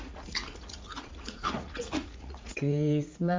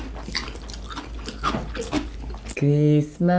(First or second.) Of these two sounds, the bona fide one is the second